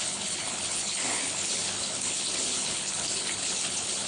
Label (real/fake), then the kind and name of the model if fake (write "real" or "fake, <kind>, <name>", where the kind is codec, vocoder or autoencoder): fake, codec, HILCodec